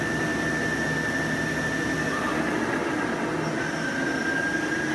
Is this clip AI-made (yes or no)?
no